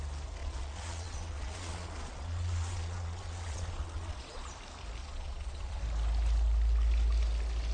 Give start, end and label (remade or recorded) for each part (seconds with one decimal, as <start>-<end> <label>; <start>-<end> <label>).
0.0-0.4 recorded; 0.4-4.5 remade; 4.5-5.0 recorded; 5.0-5.8 remade; 5.8-7.7 recorded